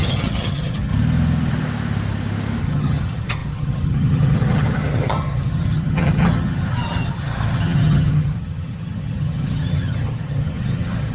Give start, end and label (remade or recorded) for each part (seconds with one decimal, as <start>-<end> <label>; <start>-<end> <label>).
0.0-0.9 remade; 0.9-2.6 recorded; 2.6-11.1 remade

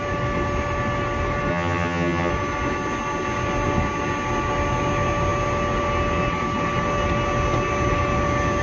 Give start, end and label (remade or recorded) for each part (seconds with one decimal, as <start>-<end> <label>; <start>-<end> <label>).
0.0-1.5 recorded; 1.5-2.3 remade; 2.3-8.6 recorded

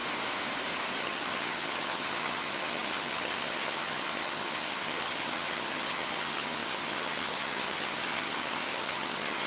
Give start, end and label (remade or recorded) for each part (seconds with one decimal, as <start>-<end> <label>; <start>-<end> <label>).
0.0-1.0 recorded; 1.0-9.5 remade

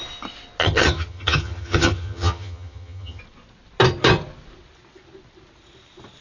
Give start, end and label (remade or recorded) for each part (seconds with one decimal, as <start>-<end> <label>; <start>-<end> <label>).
0.0-0.6 recorded; 0.6-3.2 remade; 3.2-6.2 recorded